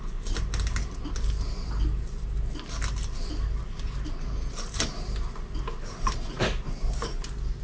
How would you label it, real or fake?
real